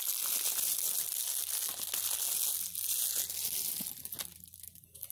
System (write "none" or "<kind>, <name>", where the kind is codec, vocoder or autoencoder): none